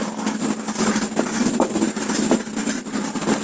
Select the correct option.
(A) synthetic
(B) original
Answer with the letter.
B